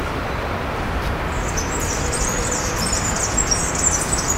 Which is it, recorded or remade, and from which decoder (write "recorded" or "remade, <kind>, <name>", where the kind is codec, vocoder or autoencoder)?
recorded